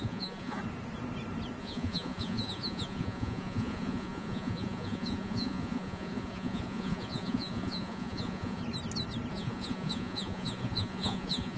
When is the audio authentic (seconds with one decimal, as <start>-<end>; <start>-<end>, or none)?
0.6-1.6; 8.6-9.3